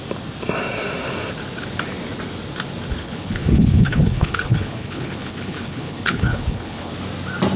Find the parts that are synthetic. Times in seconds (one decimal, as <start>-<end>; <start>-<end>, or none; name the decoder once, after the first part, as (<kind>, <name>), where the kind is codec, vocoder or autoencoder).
3.0-6.9 (codec, HILCodec)